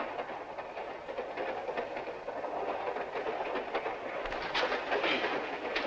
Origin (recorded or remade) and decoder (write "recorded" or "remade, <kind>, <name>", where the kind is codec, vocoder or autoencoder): recorded